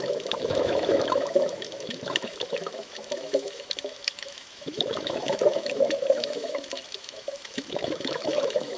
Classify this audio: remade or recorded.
remade